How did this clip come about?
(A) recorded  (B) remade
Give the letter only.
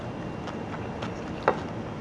A